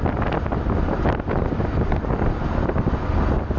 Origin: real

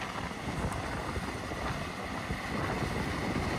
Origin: real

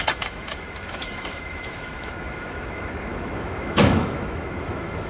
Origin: fake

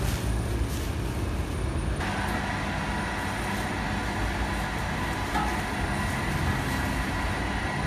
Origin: real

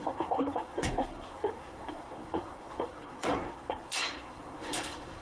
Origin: fake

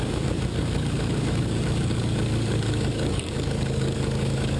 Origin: fake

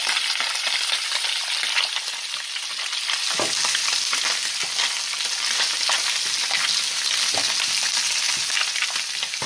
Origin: real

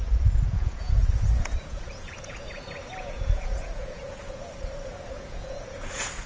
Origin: fake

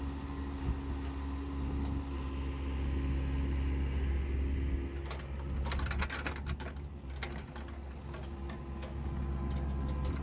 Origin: real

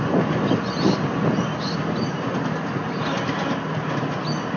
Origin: real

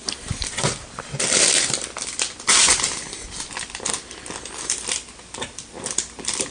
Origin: fake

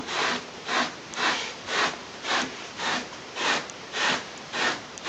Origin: fake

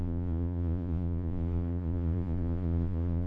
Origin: fake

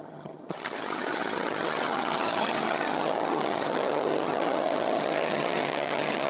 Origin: fake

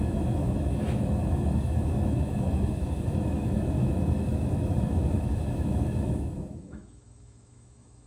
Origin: fake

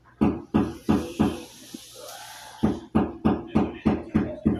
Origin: real